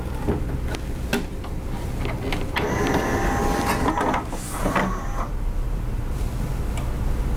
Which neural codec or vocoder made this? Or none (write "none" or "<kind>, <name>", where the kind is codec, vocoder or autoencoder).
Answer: none